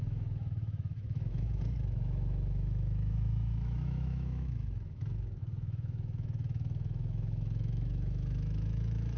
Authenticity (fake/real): fake